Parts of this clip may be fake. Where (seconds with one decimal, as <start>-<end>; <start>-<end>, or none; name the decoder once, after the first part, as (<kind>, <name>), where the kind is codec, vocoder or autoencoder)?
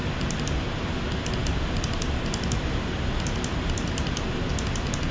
none